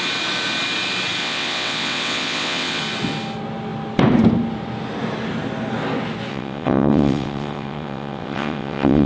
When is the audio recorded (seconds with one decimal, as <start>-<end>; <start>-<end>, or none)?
0.0-1.2; 2.8-6.3